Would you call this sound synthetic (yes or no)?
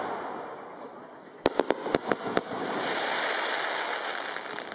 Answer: no